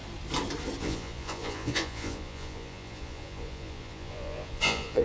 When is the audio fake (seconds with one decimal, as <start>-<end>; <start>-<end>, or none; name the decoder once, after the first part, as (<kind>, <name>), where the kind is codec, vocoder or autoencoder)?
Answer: 0.8-5.0 (vocoder, Vocos)